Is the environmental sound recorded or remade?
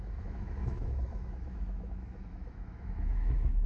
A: remade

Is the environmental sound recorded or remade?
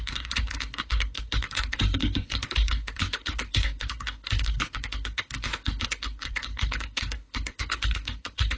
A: remade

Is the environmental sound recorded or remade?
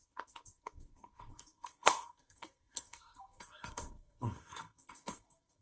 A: remade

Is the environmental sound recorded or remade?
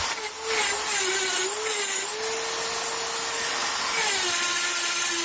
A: recorded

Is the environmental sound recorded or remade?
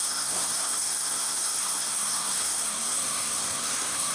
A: remade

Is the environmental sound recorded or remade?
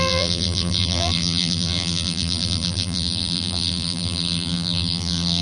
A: remade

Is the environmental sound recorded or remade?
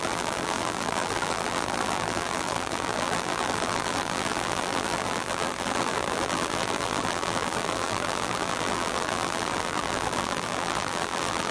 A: remade